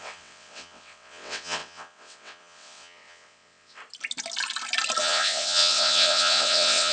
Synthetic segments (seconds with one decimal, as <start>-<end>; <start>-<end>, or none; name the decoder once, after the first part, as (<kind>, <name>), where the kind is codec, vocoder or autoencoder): 0.0-3.8 (vocoder, WaveNeXt); 5.0-6.9